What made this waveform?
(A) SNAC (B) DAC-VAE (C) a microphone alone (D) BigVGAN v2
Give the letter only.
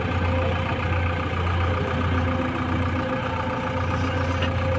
C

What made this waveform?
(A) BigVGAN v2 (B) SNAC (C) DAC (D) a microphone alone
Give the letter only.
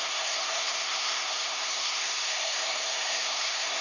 B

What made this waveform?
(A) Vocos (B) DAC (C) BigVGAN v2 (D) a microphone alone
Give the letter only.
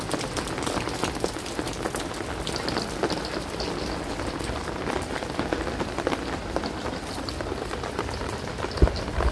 D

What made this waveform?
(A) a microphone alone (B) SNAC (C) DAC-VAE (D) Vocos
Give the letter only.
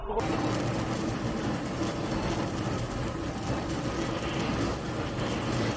A